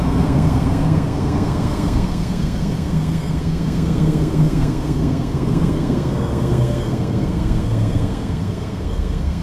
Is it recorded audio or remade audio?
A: remade